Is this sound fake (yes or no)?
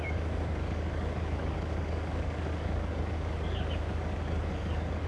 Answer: yes